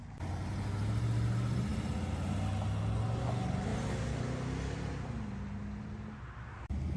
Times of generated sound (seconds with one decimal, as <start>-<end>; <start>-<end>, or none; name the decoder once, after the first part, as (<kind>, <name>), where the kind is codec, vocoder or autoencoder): none